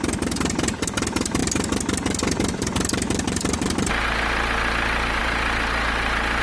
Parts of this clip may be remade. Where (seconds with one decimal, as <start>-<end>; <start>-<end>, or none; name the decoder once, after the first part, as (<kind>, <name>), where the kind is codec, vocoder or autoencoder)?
none